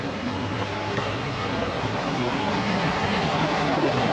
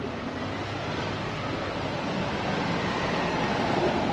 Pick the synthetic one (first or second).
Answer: first